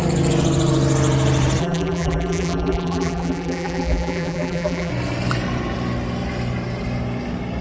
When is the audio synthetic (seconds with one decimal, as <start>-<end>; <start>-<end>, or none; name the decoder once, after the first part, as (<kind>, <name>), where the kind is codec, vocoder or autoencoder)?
1.6-4.9 (vocoder, BigVGAN v2)